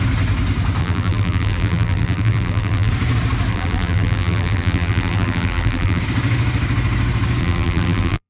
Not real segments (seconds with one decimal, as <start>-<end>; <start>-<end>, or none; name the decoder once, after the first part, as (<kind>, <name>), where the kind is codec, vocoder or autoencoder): 0.8-2.9 (vocoder, BigVGAN v2); 3.5-6.0; 7.4-8.3